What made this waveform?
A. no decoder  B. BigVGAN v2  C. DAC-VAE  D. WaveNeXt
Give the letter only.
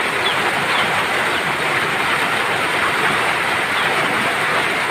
B